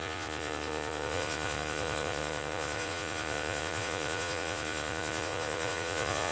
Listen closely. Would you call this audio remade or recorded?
remade